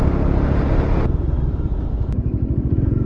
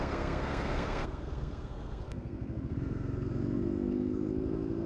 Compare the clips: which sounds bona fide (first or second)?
first